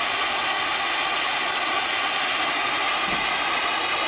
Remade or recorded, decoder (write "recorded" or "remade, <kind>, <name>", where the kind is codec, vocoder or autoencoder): recorded